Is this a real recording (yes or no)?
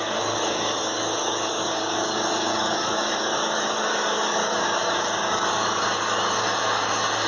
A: no